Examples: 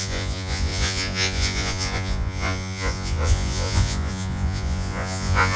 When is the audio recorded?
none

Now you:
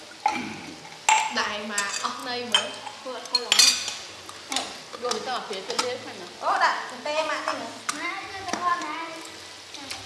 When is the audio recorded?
0.0-10.1

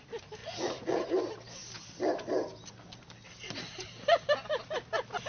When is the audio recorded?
0.0-0.4; 1.1-5.3

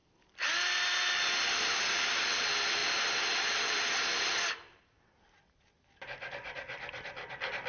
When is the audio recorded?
0.0-7.7

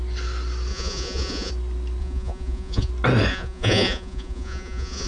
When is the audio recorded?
0.0-0.7; 1.5-2.0; 2.9-3.3